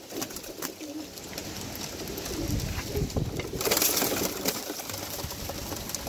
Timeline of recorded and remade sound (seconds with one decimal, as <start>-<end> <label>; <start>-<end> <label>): 0.0-6.1 recorded